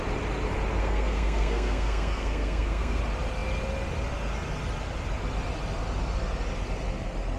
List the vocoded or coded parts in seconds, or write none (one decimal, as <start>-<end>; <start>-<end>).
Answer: 0.8-3.0

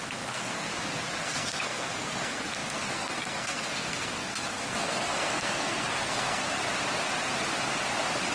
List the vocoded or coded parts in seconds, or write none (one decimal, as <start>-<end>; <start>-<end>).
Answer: 0.0-0.7; 1.2-6.6

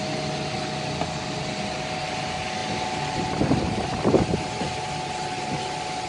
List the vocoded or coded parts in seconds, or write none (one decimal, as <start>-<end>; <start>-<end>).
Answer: none

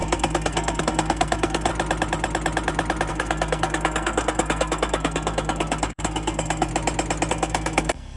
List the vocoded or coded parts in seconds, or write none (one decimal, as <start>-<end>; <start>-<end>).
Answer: 0.0-1.7; 3.1-6.7; 7.3-8.2